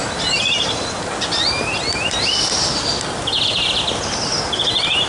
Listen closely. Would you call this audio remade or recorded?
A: recorded